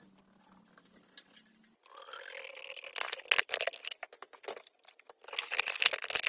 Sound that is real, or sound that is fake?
real